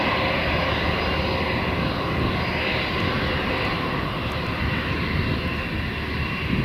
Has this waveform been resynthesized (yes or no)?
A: no